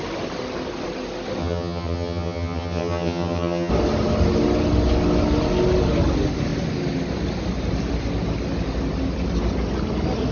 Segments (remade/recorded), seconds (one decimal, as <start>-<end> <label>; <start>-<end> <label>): 0.0-1.4 recorded; 1.4-3.7 remade; 3.7-10.3 recorded